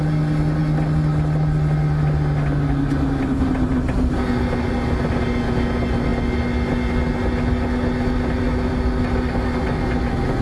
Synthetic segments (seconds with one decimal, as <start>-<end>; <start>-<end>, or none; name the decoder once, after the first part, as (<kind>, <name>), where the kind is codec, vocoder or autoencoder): none